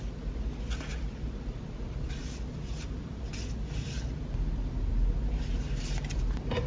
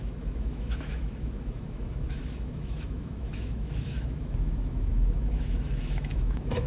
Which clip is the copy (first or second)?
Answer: second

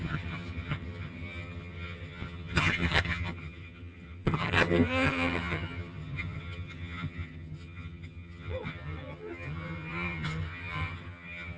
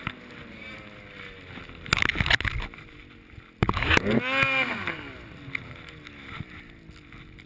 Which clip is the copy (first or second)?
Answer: first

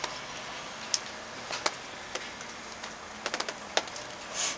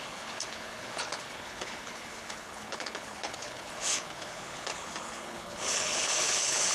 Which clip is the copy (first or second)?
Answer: second